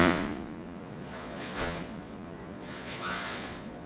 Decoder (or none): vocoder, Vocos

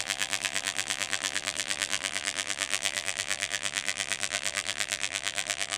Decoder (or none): vocoder, BigVGAN v2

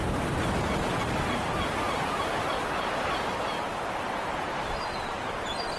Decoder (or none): vocoder, BigVGAN v2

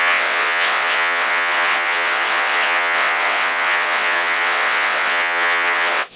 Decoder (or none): vocoder, WaveNeXt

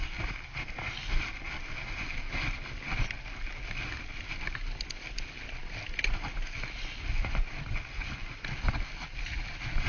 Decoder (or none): none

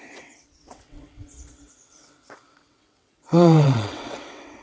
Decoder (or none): vocoder, WaveNeXt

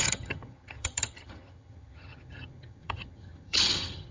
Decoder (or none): vocoder, HiFi-GAN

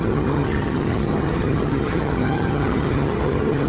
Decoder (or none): vocoder, HiFi-GAN